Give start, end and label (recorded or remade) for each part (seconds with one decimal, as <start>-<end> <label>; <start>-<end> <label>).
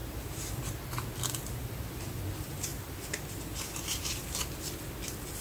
0.0-5.4 recorded